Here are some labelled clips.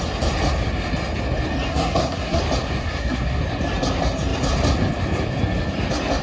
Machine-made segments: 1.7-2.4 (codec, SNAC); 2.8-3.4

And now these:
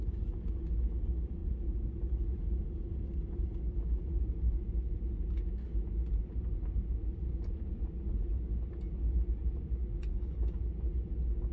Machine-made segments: 10.1-10.6 (codec, HILCodec)

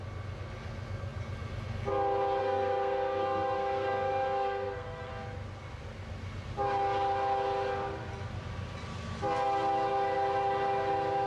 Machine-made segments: 2.4-5.1 (codec, SNAC)